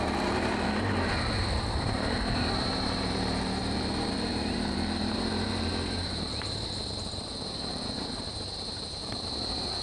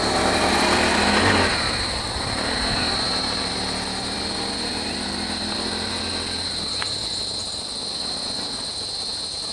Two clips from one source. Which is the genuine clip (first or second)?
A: second